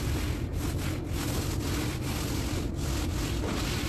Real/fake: real